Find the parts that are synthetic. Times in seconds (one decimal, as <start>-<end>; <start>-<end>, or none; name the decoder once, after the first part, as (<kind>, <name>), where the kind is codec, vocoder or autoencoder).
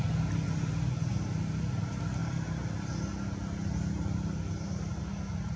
none